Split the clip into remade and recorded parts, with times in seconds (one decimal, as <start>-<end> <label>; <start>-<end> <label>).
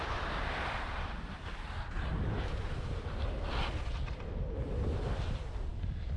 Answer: 0.0-6.2 recorded